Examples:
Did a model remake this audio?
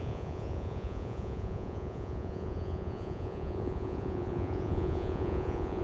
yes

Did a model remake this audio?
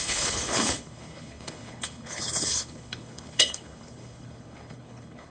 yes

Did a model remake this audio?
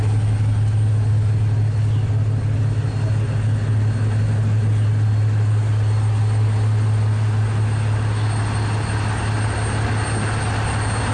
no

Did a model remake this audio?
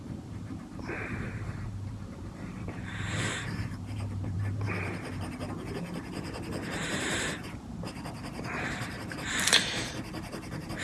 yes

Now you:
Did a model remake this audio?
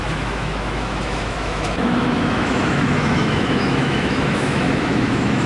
yes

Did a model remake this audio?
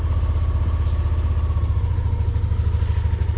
no